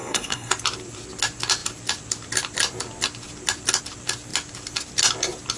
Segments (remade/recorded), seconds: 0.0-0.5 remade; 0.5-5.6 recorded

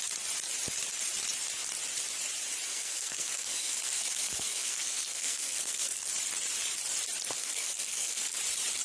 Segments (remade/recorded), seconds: 0.0-2.7 recorded; 2.7-6.1 remade; 6.1-7.4 recorded; 7.4-8.4 remade; 8.4-8.8 recorded

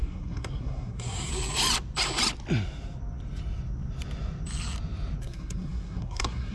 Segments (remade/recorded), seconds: 0.0-1.3 remade; 1.3-5.2 recorded; 5.2-6.5 remade